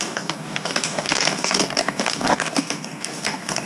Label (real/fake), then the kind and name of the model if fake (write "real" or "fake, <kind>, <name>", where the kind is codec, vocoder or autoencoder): fake, codec, DAC